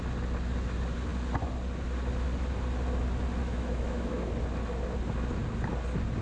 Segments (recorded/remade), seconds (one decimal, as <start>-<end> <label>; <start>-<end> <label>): 0.0-3.4 recorded; 3.4-4.3 remade; 4.3-6.2 recorded